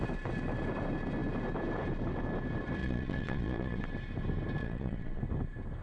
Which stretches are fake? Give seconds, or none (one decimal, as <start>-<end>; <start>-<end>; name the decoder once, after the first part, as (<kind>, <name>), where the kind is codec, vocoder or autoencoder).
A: 2.8-3.8 (vocoder, Vocos); 4.6-5.2